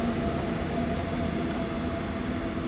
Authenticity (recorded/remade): recorded